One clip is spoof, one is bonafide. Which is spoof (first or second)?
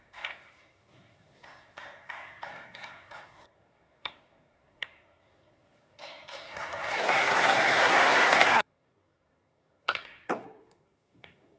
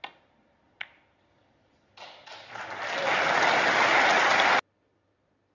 first